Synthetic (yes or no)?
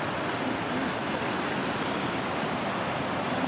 no